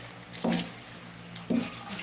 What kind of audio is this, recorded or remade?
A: recorded